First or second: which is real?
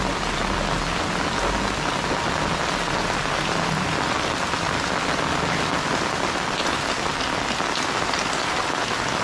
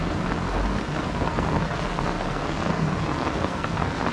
first